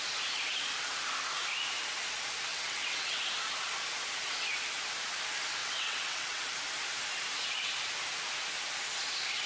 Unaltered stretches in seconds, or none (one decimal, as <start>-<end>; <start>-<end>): 0.0-2.5; 3.2-5.6; 6.5-9.5